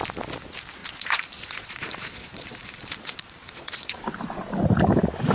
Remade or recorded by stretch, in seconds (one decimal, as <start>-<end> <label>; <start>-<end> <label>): 0.0-0.8 recorded; 0.8-4.0 remade; 4.0-5.3 recorded